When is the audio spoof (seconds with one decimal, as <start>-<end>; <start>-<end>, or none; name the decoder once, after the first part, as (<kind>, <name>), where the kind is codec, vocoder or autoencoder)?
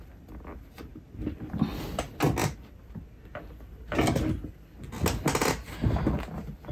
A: none